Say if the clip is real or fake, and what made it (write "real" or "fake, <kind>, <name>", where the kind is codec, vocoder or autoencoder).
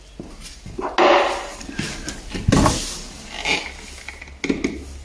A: real